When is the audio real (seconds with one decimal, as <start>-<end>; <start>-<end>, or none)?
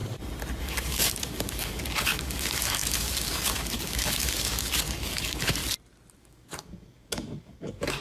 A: 0.0-0.6; 5.6-6.2